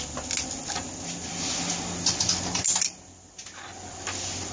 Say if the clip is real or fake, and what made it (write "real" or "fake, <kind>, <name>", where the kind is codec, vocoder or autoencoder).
real